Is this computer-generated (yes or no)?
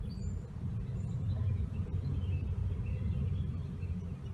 no